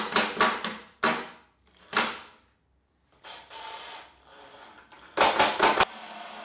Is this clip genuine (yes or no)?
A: yes